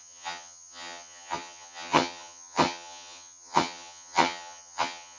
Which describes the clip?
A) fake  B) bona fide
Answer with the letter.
A